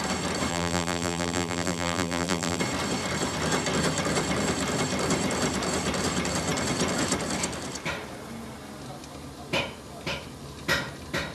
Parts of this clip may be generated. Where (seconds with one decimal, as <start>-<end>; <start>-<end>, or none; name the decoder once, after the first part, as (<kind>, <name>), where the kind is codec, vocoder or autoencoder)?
0.5-2.6 (vocoder, BigVGAN v2)